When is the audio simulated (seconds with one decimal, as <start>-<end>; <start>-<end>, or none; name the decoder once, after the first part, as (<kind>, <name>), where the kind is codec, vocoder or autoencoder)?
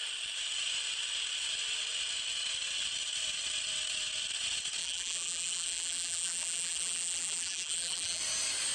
4.8-8.2 (vocoder, BigVGAN v2)